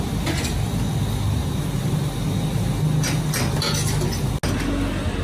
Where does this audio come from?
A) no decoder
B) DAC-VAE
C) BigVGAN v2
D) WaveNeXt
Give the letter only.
A